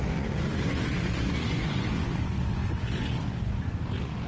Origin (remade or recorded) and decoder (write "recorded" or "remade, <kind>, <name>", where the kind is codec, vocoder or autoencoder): remade, vocoder, Vocos